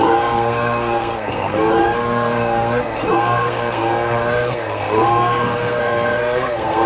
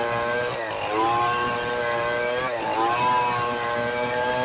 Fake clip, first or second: first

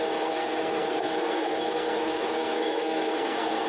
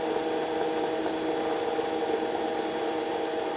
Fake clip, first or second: first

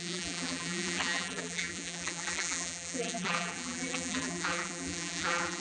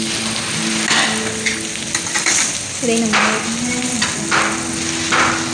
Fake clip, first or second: first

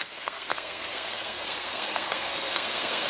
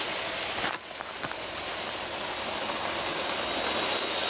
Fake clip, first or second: first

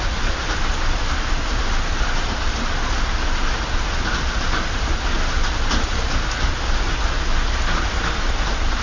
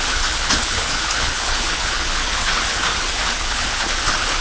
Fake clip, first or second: second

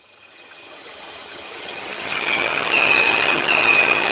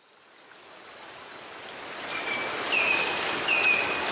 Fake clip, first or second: first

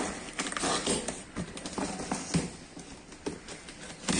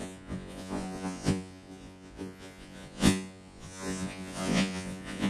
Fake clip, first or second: second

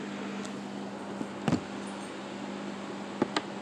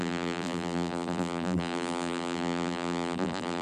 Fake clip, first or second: second